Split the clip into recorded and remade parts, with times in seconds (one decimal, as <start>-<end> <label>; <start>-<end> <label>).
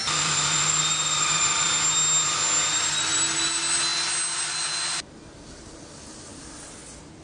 0.0-1.7 remade; 1.7-7.2 recorded